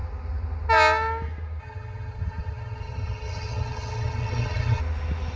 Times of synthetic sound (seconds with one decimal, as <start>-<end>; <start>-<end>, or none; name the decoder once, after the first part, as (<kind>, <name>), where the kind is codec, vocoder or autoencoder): 1.6-4.8 (vocoder, HiFi-GAN)